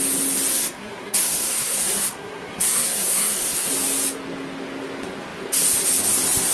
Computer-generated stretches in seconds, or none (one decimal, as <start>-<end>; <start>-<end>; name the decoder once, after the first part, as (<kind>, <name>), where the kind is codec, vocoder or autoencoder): 0.5-3.7 (codec, SNAC)